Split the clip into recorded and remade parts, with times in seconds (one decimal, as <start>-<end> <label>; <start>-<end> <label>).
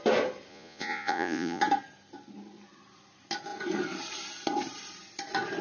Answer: 0.0-0.5 recorded; 0.5-1.6 remade; 1.6-5.6 recorded